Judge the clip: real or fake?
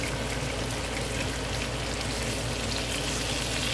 real